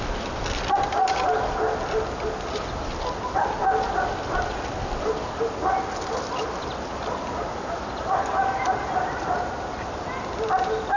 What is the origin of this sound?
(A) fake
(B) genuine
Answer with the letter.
B